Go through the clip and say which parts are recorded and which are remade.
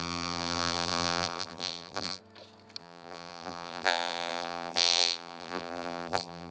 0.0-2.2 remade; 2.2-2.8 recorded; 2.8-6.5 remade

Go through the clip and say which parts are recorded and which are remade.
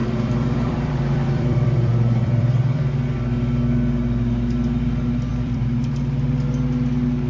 0.0-2.9 remade; 2.9-5.3 recorded; 5.3-5.9 remade; 5.9-7.3 recorded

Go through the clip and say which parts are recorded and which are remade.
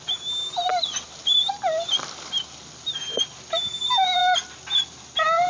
0.0-5.5 recorded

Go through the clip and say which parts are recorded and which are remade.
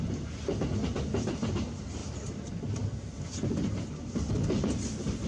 0.0-2.0 recorded; 2.0-4.3 remade; 4.3-5.3 recorded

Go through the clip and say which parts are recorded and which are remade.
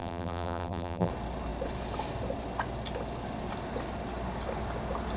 0.0-1.1 remade; 1.1-5.2 recorded